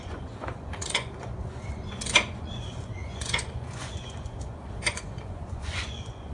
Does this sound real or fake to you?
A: fake